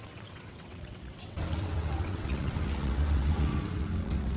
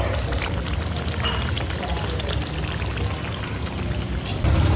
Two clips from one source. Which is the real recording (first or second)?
second